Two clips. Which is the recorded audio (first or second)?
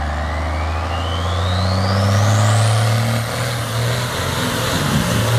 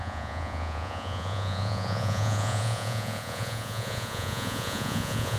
first